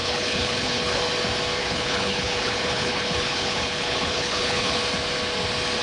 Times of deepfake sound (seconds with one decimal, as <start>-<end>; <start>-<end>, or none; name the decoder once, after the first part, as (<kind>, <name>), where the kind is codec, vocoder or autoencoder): 0.0-1.0 (codec, HILCodec); 1.6-4.8